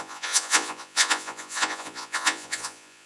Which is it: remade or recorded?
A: remade